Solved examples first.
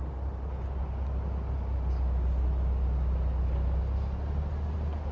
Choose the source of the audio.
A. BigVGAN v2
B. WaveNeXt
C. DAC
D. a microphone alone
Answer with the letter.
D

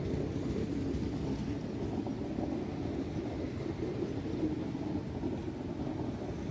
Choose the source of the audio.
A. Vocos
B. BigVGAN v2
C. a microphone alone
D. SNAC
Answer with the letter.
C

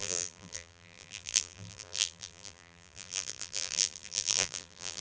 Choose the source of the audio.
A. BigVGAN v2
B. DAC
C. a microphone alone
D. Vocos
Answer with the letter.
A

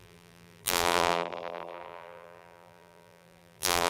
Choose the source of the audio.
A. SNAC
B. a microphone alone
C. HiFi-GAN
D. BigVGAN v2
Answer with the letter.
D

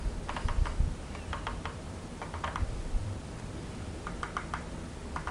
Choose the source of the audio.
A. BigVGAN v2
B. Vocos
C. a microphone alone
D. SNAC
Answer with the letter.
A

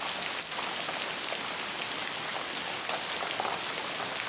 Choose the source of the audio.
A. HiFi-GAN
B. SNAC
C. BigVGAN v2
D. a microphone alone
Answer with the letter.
D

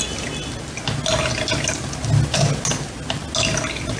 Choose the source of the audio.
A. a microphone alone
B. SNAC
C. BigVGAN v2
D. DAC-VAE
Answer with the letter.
A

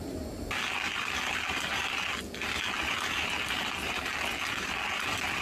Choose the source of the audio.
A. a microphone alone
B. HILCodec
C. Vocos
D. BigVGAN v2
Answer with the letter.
A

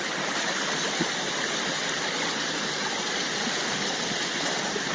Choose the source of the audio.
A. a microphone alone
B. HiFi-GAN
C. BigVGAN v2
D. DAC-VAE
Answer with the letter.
C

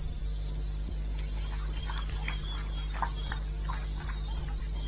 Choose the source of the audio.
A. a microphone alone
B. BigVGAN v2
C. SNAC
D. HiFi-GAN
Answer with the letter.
A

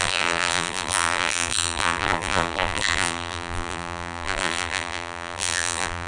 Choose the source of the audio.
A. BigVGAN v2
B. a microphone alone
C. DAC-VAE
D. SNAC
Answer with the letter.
A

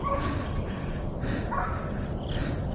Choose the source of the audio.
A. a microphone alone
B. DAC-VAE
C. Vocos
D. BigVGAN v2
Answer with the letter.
A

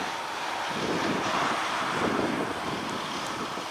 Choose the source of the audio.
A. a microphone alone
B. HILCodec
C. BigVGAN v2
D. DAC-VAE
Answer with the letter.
C